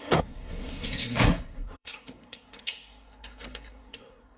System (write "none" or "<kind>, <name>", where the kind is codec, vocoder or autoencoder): codec, SNAC